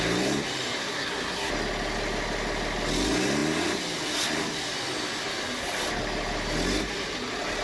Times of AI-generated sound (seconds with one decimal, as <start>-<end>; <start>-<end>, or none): 0.8-1.5